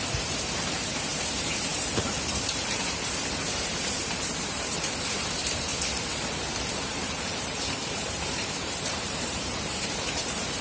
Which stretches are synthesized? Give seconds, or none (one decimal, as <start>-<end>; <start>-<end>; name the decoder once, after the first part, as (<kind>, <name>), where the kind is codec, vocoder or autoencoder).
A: 0.0-5.7 (vocoder, BigVGAN v2); 6.7-10.6